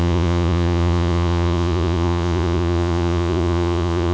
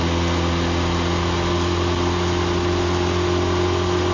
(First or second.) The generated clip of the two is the first